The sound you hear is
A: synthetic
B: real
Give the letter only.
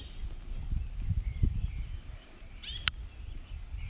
B